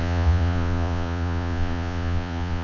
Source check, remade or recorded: remade